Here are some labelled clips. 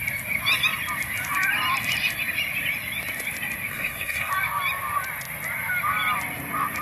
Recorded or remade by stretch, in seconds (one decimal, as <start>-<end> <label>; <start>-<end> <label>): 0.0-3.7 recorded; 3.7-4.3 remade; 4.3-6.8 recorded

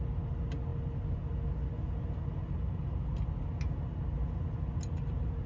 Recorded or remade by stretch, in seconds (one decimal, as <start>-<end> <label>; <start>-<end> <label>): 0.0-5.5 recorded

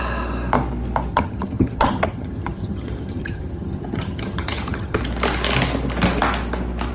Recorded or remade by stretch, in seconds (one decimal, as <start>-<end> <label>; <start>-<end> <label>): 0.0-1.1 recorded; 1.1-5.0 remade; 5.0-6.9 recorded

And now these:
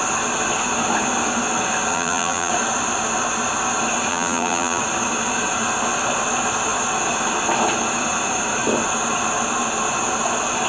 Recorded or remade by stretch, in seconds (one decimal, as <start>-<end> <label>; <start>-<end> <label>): 0.0-1.9 recorded; 1.9-2.5 remade; 2.5-4.1 recorded; 4.1-4.8 remade; 4.8-10.7 recorded

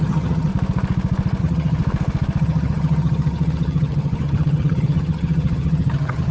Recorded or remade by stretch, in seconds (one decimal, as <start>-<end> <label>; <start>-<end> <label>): 0.0-0.5 remade; 0.5-1.4 recorded; 1.4-1.8 remade; 1.8-2.4 recorded; 2.4-6.3 remade

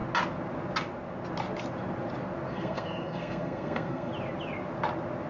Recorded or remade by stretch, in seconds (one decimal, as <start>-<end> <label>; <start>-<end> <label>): 0.0-2.5 recorded; 2.5-4.1 remade; 4.1-5.3 recorded

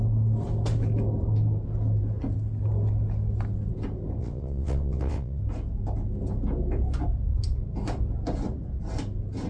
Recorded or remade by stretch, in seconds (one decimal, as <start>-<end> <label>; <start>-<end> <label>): 0.0-4.2 recorded; 4.2-5.4 remade; 5.4-9.5 recorded